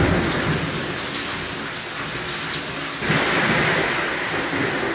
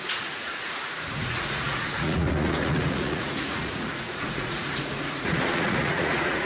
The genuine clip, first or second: first